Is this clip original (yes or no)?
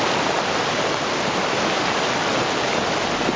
yes